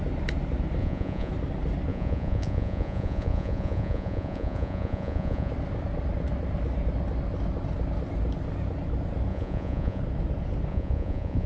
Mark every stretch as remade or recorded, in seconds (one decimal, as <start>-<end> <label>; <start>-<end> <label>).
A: 0.0-0.8 recorded; 0.8-1.3 remade; 1.3-1.9 recorded; 1.9-5.5 remade; 5.5-9.3 recorded; 9.3-10.0 remade; 10.0-10.7 recorded; 10.7-11.5 remade